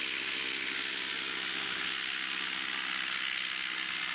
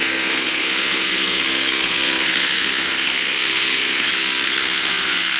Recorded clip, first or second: first